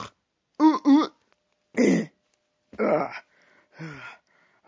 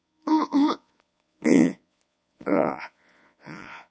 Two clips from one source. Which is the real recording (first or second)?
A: first